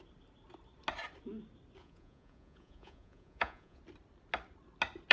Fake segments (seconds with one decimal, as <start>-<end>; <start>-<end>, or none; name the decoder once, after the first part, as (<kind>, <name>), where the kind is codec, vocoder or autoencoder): 1.8-3.8 (vocoder, Vocos)